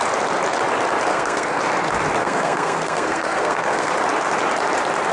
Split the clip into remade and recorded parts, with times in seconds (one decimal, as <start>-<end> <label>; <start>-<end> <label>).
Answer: 0.0-1.1 recorded; 1.1-1.6 remade; 1.6-2.2 recorded; 2.2-3.9 remade; 3.9-5.1 recorded